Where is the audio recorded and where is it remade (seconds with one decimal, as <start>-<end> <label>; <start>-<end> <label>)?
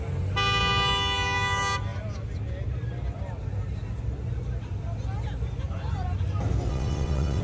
0.0-6.7 recorded; 6.7-7.4 remade